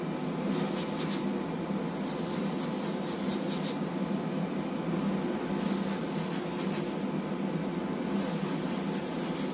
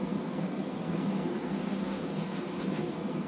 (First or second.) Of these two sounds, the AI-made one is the second